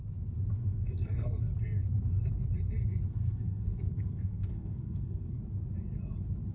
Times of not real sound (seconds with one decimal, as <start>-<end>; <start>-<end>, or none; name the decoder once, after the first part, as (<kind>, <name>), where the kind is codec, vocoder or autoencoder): 0.6-1.4 (codec, SNAC); 3.1-5.4